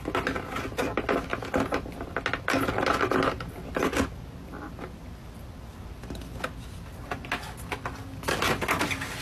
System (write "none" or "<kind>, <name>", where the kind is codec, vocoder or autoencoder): none